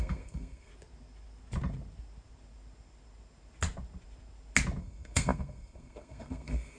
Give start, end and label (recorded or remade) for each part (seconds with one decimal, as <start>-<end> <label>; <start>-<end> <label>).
0.0-0.7 remade; 0.7-4.8 recorded; 4.8-6.8 remade